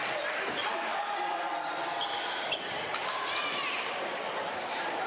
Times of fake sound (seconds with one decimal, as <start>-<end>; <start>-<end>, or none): 0.0-5.1